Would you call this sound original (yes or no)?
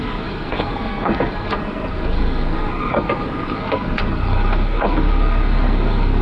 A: no